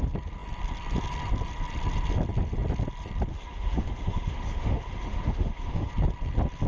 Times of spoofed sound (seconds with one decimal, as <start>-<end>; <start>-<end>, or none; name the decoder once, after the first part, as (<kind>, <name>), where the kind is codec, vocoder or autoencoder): 3.3-5.9 (autoencoder, DAC-VAE)